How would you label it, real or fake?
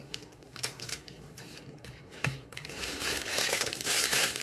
fake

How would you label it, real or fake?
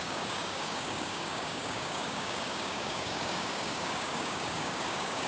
fake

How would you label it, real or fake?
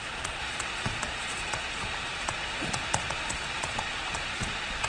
fake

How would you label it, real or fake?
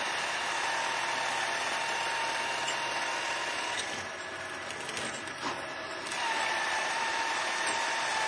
real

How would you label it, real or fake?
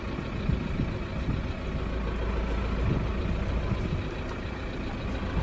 real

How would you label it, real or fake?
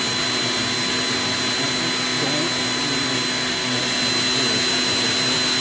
real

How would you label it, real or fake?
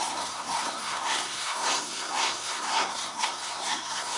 fake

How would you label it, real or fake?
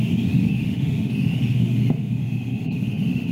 fake